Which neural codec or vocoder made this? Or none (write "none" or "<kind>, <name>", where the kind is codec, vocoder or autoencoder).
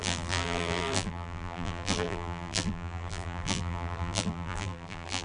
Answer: vocoder, BigVGAN v2